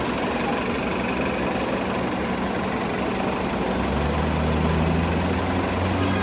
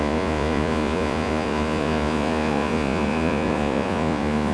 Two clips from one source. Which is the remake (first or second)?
second